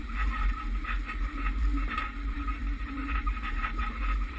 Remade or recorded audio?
remade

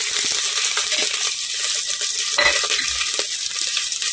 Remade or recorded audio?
recorded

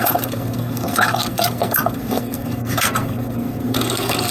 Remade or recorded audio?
remade